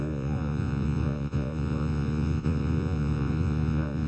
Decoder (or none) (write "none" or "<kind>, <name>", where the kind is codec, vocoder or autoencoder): vocoder, Vocos